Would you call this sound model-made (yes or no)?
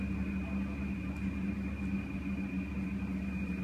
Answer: no